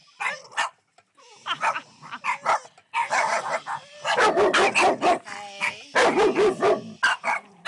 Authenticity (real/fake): real